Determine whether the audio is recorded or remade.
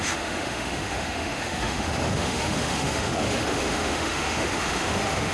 remade